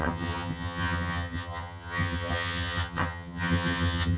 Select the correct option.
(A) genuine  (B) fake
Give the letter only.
B